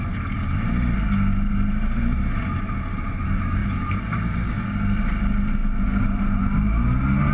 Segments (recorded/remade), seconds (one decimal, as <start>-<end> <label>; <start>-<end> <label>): 0.0-7.3 recorded